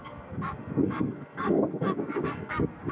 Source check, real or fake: fake